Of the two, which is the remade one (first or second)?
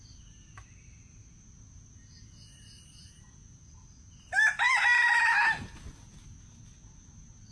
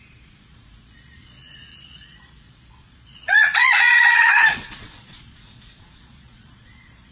second